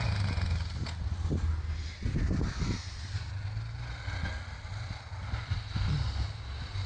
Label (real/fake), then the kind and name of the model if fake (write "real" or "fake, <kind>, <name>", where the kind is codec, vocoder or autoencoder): real